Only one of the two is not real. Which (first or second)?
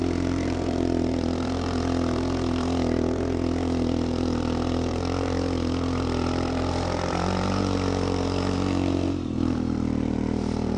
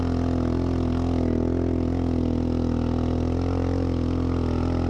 first